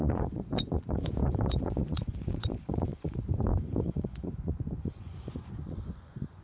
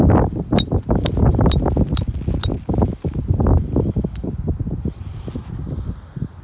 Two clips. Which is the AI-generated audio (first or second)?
first